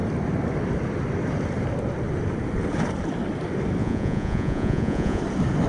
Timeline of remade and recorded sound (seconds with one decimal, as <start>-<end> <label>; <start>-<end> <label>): 0.0-3.8 recorded; 3.8-5.2 remade; 5.2-5.7 recorded